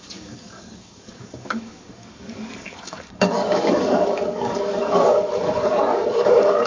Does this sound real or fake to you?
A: fake